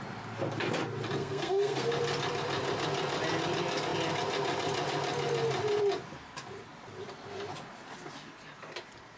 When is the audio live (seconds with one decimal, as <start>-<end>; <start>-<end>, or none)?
0.0-1.2; 1.9-9.2